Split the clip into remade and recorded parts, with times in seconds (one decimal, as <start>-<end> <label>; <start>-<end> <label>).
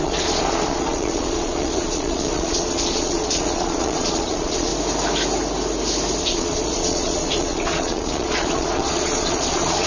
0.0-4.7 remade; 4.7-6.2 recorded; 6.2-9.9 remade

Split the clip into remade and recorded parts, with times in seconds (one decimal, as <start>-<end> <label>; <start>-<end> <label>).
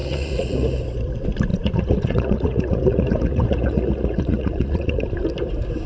0.0-0.8 remade; 0.8-1.5 recorded; 1.5-5.0 remade; 5.0-5.9 recorded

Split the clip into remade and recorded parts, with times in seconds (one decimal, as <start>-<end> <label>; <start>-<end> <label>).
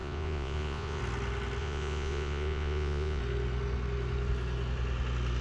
0.0-1.0 remade; 1.0-1.6 recorded; 1.6-3.2 remade; 3.2-5.4 recorded